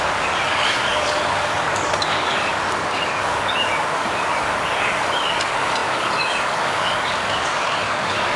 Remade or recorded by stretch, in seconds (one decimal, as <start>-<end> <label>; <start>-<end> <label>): 0.0-8.4 remade

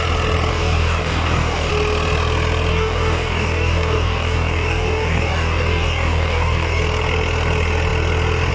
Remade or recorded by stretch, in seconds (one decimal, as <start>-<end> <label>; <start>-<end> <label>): 0.0-0.5 recorded; 0.5-1.7 remade; 1.7-2.7 recorded; 2.7-6.8 remade; 6.8-8.5 recorded

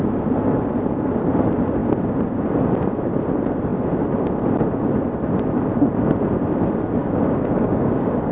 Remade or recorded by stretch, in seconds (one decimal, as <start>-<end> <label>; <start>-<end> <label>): 0.0-7.0 recorded; 7.0-8.3 remade

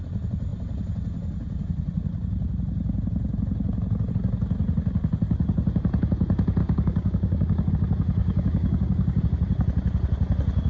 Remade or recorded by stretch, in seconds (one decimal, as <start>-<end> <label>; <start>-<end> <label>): 0.0-6.6 recorded; 6.6-7.7 remade; 7.7-8.2 recorded; 8.2-9.2 remade; 9.2-10.7 recorded

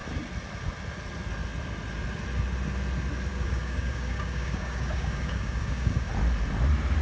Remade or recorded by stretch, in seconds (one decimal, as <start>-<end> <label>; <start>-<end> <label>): 0.0-3.3 recorded; 3.3-6.1 remade; 6.1-7.0 recorded

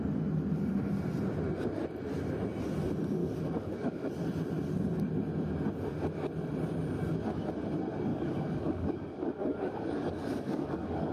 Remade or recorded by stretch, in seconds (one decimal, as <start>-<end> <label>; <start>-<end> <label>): 0.0-3.2 recorded; 3.2-4.1 remade; 4.1-8.1 recorded; 8.1-11.1 remade

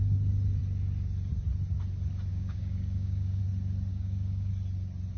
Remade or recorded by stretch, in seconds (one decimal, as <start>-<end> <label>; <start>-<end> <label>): 0.0-2.3 recorded; 2.3-3.4 remade; 3.4-3.9 recorded; 3.9-4.5 remade; 4.5-5.2 recorded

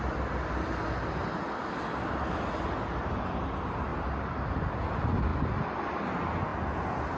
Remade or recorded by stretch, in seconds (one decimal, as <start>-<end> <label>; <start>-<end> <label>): 0.0-7.2 recorded